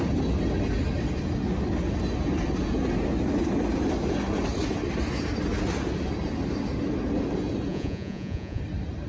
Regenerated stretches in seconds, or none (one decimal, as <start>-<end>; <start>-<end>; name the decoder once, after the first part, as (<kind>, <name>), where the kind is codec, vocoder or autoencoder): 7.7-8.6 (vocoder, Vocos)